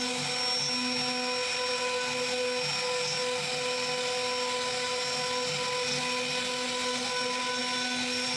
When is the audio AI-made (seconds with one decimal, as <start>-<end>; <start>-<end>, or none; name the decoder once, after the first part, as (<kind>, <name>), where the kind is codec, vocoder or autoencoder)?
none